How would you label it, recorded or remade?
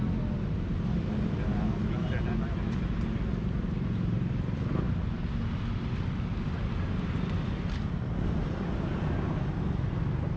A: recorded